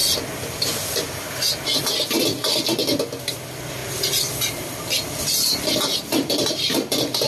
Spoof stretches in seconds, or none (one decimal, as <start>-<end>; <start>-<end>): none